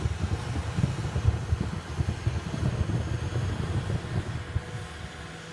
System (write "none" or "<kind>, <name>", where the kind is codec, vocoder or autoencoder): none